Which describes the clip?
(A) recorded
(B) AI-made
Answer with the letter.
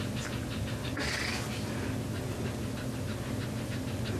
A